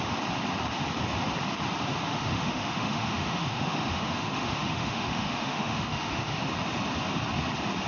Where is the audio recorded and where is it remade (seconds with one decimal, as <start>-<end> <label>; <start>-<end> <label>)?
0.0-2.1 recorded; 2.1-6.4 remade; 6.4-7.9 recorded